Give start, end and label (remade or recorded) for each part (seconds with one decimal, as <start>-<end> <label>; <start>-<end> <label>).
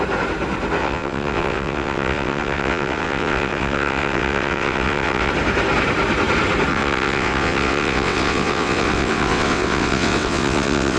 0.0-0.8 recorded; 0.8-5.3 remade; 5.3-6.7 recorded; 6.7-11.0 remade